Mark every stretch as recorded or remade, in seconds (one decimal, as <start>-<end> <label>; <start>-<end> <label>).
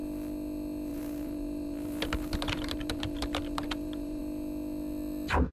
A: 0.0-0.9 recorded; 0.9-4.2 remade; 4.2-5.5 recorded